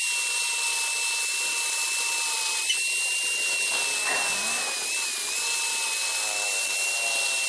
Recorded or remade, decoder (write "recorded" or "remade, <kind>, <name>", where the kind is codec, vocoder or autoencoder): recorded